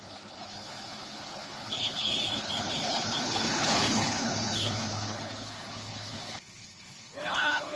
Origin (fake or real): fake